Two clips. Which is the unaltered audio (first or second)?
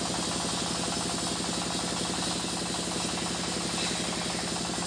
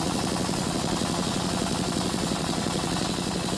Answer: first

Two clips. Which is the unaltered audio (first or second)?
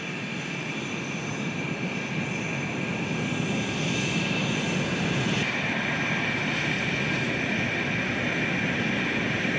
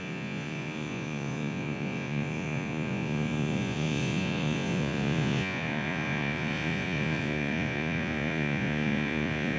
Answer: first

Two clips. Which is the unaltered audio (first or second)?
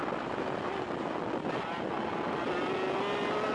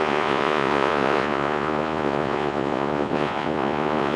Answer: first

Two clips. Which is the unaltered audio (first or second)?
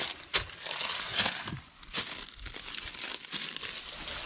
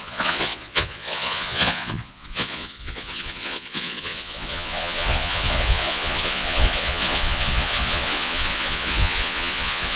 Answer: first